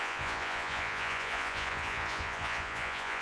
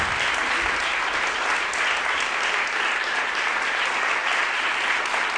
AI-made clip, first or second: first